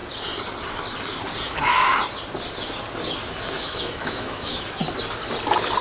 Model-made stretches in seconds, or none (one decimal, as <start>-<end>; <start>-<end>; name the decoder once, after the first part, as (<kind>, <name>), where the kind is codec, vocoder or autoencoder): 1.4-1.9 (autoencoder, DAC-VAE); 3.6-4.8